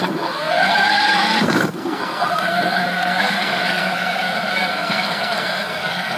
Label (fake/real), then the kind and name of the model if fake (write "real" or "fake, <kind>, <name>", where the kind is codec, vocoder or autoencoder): fake, codec, SNAC